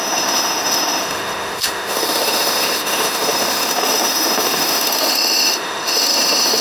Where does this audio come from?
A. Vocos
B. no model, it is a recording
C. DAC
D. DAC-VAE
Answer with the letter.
D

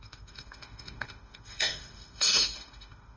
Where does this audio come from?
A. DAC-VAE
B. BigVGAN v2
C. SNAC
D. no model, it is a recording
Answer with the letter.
A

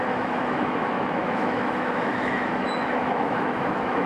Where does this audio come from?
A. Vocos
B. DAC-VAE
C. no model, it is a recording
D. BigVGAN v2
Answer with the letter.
B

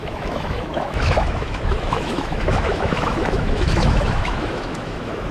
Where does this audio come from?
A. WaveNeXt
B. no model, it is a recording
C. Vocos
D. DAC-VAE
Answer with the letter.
D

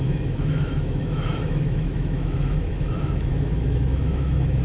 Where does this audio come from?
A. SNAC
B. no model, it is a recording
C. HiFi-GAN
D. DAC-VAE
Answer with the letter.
D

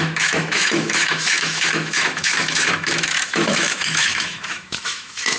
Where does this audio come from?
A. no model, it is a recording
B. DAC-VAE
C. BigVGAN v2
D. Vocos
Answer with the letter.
B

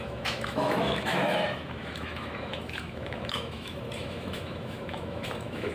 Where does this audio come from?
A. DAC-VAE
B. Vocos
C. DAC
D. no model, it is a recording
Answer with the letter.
A